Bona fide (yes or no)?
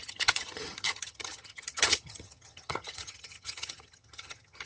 no